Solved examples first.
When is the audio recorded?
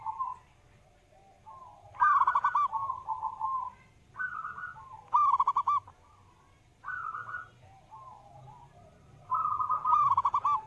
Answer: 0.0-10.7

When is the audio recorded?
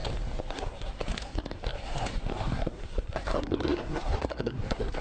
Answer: 0.0-0.5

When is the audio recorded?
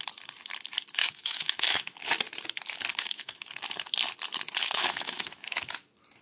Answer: 0.0-1.0; 2.0-2.9; 3.5-4.6; 5.7-6.2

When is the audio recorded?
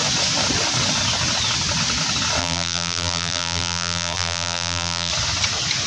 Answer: 0.0-2.4; 5.1-5.9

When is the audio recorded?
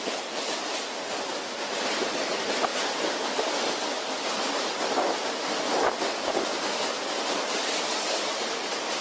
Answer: 0.0-9.0